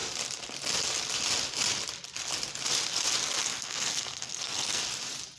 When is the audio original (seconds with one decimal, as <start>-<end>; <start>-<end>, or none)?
0.0-3.4; 4.8-5.4